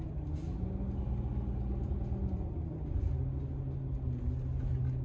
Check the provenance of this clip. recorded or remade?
recorded